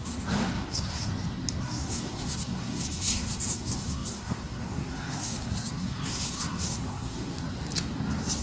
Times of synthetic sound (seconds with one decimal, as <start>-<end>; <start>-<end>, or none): 0.0-1.1; 1.6-7.4